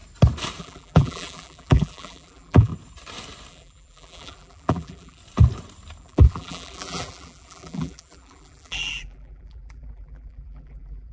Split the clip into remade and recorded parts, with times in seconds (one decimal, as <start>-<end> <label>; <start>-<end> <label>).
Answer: 0.0-0.6 recorded; 0.6-2.7 remade; 2.7-3.5 recorded; 3.5-5.2 remade; 5.2-6.0 recorded; 6.0-11.1 remade